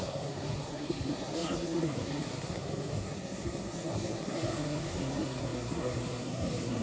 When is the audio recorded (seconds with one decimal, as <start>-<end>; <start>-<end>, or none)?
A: none